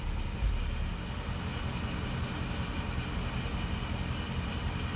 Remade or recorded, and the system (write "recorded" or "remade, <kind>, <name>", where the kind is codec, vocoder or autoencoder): recorded